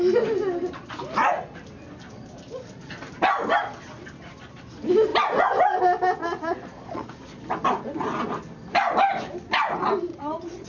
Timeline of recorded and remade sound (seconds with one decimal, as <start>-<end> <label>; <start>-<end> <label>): 0.0-6.2 recorded; 6.2-7.4 remade; 7.4-10.1 recorded; 10.1-10.7 remade

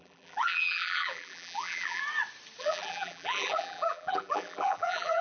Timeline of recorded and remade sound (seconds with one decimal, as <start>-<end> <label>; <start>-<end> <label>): 0.0-2.0 remade; 2.0-2.6 recorded; 2.6-5.2 remade

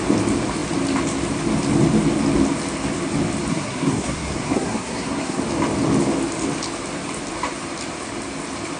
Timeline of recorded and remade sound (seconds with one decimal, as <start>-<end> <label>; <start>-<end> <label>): 0.0-3.5 recorded; 3.5-5.4 remade; 5.4-8.8 recorded

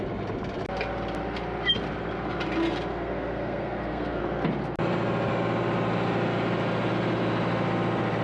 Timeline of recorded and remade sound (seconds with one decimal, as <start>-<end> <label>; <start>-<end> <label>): 0.0-2.9 recorded; 2.9-4.2 remade; 4.2-8.2 recorded